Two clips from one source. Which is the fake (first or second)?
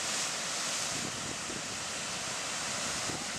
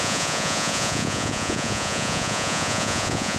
second